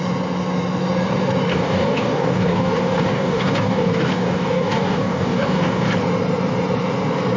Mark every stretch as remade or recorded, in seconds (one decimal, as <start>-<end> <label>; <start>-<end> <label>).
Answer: 0.0-1.5 recorded; 1.5-5.9 remade; 5.9-7.4 recorded